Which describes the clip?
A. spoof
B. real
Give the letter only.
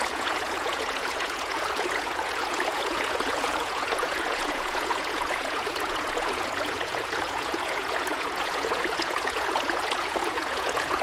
A